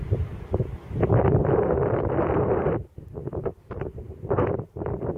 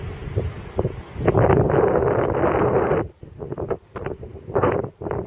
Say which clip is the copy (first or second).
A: first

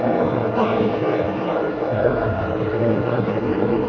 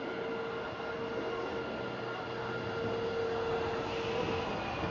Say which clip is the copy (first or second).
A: first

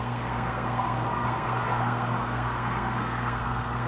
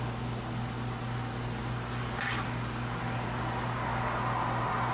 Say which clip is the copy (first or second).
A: first